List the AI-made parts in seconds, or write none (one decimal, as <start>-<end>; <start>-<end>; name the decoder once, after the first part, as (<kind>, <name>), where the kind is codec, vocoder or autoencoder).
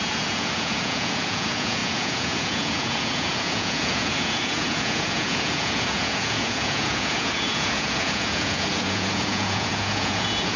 0.0-10.6 (vocoder, Vocos)